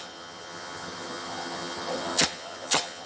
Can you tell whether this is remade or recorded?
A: remade